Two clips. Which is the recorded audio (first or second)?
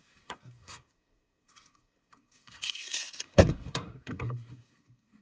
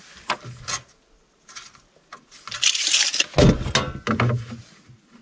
second